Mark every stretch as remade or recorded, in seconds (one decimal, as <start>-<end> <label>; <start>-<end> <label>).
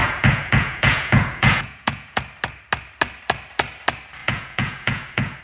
0.0-2.2 remade; 2.2-4.2 recorded; 4.2-5.4 remade